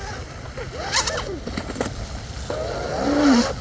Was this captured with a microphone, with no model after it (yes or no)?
yes